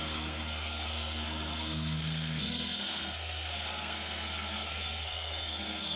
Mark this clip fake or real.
fake